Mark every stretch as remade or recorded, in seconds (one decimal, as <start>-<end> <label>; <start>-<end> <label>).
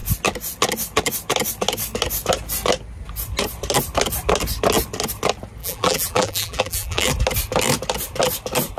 0.0-5.6 recorded; 5.6-7.1 remade; 7.1-8.8 recorded